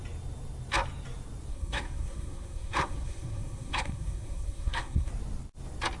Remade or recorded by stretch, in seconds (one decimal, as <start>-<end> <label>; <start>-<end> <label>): 0.0-1.5 recorded; 1.5-5.1 remade; 5.1-6.0 recorded